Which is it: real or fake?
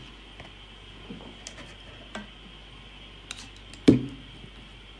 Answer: real